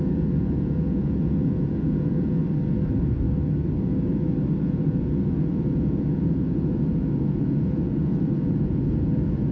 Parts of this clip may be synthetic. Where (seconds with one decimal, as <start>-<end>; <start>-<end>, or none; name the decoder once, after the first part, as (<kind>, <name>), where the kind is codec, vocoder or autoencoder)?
0.0-2.4 (vocoder, Vocos); 4.6-9.5